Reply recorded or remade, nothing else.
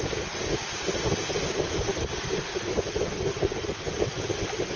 recorded